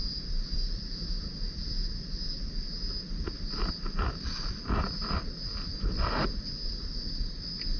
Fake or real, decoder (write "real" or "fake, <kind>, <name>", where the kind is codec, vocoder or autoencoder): real